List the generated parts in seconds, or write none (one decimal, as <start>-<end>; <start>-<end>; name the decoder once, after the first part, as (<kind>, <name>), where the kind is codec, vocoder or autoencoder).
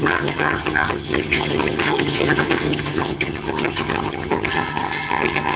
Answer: 0.0-5.6 (vocoder, HiFi-GAN)